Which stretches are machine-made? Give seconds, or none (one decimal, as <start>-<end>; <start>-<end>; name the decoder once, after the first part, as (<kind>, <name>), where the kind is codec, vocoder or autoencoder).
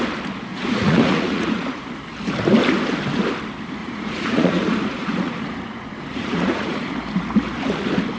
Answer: 0.5-1.8 (vocoder, Vocos); 3.8-6.9